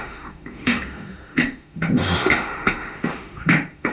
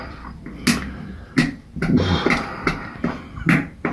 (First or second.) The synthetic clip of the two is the first